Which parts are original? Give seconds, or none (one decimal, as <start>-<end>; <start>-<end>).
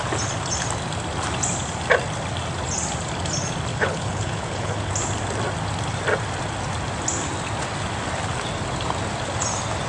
0.0-3.7; 4.9-9.9